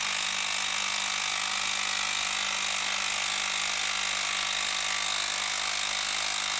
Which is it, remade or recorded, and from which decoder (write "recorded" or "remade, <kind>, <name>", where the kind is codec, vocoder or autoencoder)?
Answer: recorded